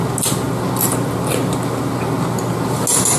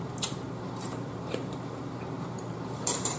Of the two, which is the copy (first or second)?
second